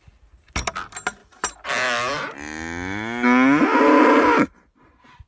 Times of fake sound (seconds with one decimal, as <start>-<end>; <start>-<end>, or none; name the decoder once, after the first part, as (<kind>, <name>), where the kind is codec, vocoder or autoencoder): none